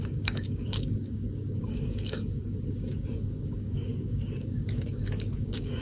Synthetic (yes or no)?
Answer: yes